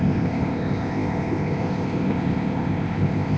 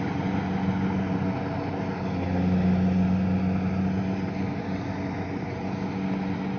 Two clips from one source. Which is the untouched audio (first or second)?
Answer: second